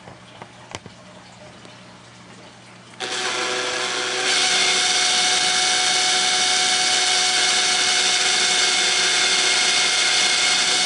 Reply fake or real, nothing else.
real